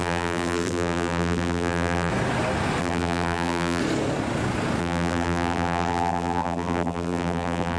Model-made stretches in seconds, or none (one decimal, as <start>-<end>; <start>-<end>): 0.0-2.1; 2.8-3.8; 4.8-7.8

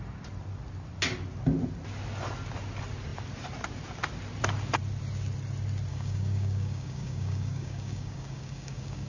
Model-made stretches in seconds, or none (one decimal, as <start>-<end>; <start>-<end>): 5.9-9.1

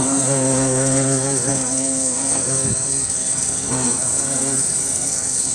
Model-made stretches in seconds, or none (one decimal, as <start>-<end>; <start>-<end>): 0.0-5.5